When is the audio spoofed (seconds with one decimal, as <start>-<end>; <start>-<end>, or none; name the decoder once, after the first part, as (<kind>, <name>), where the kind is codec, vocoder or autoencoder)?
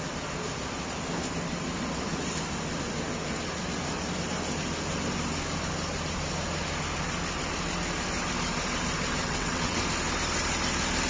9.2-9.8 (vocoder, WaveNeXt)